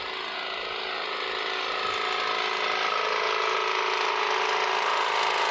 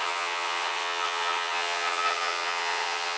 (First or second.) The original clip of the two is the first